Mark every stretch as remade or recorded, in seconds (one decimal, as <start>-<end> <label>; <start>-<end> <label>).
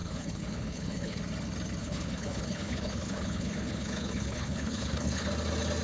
0.0-1.2 remade; 1.2-1.8 recorded; 1.8-5.3 remade; 5.3-5.8 recorded